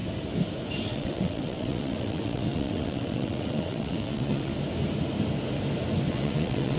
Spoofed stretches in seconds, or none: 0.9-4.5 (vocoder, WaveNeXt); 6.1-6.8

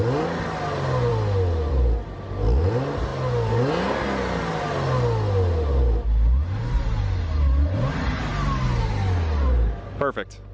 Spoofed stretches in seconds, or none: none

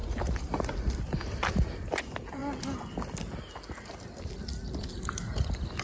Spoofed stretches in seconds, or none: none